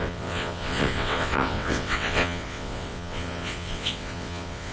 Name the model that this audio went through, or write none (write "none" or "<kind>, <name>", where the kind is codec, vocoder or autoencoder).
vocoder, WaveNeXt